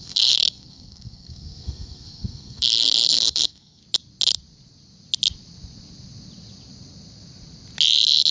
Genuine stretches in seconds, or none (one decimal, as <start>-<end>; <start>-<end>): 3.8-8.3